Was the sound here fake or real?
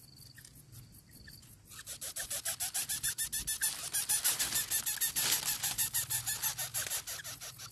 real